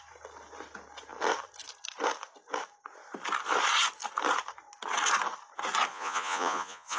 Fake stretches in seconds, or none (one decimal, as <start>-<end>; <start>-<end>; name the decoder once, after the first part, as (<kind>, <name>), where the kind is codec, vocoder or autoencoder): 5.9-7.0 (vocoder, Vocos)